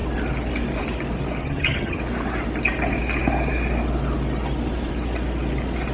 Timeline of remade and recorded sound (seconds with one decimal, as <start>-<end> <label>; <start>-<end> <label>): 0.0-1.4 recorded; 1.4-2.0 remade; 2.0-5.9 recorded